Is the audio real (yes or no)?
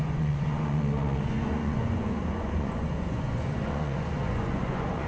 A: no